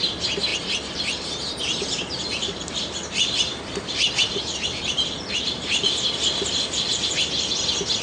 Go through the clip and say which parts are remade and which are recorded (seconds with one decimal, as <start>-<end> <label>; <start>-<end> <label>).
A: 0.0-0.5 recorded; 0.5-1.6 remade; 1.6-2.3 recorded; 2.3-5.9 remade; 5.9-8.0 recorded